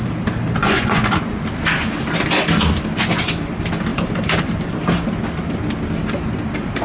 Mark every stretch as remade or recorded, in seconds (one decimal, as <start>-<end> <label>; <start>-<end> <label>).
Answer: 0.0-0.6 recorded; 0.6-1.4 remade; 1.4-6.8 recorded